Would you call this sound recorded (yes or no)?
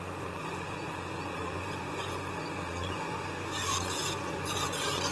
no